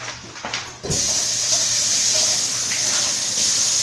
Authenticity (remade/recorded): recorded